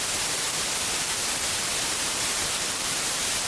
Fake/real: fake